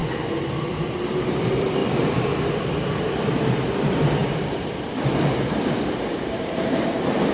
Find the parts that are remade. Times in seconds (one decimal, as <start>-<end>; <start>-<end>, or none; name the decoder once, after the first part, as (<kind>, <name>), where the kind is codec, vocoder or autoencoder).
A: 0.5-7.3 (vocoder, BigVGAN v2)